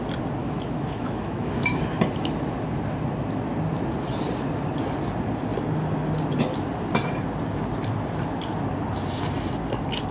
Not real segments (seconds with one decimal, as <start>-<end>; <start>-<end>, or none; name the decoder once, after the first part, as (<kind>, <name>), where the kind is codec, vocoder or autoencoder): 0.4-1.8 (autoencoder, DAC-VAE)